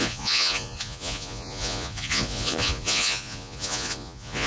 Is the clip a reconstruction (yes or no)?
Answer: yes